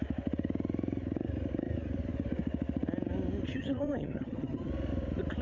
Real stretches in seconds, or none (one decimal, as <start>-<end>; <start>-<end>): 0.0-3.5; 4.7-5.4